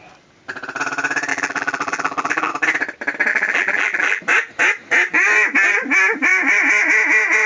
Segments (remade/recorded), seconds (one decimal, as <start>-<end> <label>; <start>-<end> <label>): 0.0-1.3 recorded; 1.3-2.5 remade; 2.5-3.3 recorded; 3.3-4.2 remade; 4.2-7.5 recorded